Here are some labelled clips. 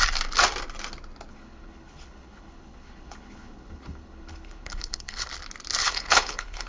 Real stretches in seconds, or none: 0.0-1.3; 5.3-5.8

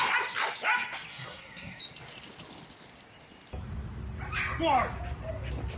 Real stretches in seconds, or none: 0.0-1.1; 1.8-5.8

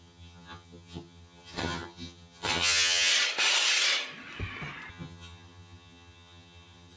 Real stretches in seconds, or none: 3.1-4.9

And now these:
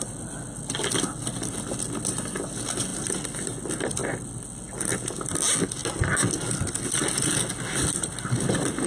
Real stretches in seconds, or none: 0.0-8.9

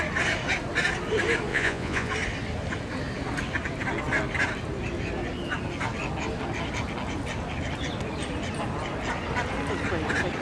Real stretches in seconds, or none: 0.0-1.5; 2.1-10.4

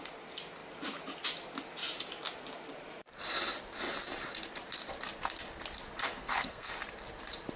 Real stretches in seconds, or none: 0.0-6.0; 6.7-7.6